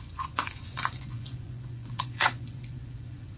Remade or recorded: remade